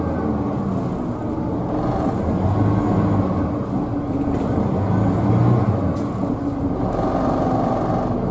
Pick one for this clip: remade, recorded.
recorded